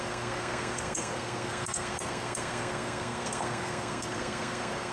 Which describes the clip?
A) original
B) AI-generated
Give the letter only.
B